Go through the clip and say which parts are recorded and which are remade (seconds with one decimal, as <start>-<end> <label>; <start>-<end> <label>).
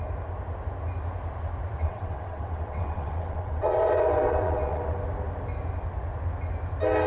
0.0-1.8 recorded; 1.8-4.9 remade; 4.9-7.1 recorded